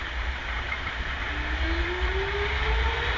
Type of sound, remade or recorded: recorded